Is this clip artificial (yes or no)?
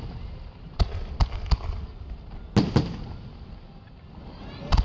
no